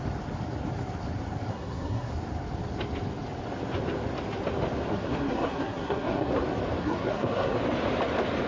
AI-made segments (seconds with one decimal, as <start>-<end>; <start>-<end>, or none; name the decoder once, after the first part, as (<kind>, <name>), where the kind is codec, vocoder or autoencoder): 1.5-2.1 (codec, SNAC); 4.9-6.3; 6.8-7.6